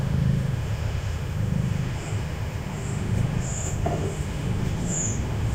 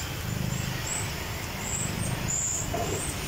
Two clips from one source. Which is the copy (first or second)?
first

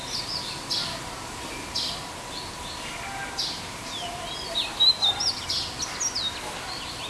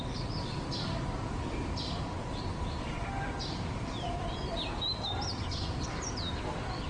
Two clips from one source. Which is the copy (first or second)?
second